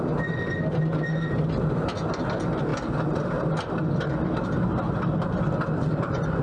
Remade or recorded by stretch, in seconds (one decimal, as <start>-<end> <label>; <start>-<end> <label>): 0.0-2.7 recorded; 2.7-6.4 remade